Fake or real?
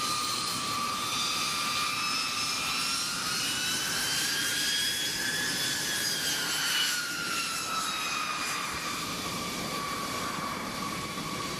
fake